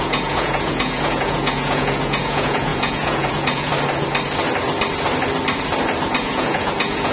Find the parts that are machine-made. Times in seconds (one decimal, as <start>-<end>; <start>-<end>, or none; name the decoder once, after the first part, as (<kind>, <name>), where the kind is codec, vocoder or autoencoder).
0.0-3.7 (vocoder, Vocos); 6.2-7.1